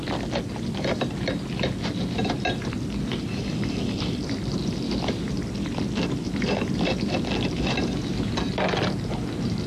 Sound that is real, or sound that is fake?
real